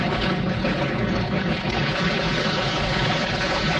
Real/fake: fake